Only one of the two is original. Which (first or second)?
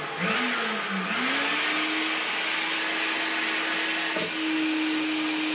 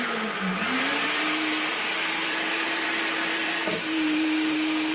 first